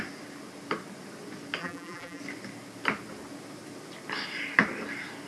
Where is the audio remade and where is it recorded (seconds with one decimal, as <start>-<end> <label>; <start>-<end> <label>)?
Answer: 0.0-1.6 recorded; 1.6-2.2 remade; 2.2-5.3 recorded